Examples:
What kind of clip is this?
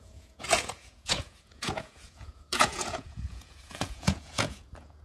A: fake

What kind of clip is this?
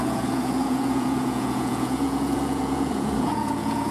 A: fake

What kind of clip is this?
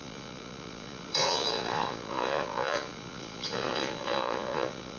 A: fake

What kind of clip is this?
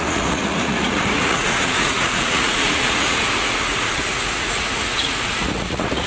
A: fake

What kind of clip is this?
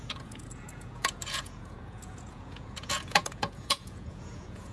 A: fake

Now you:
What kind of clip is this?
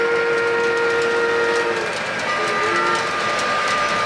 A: real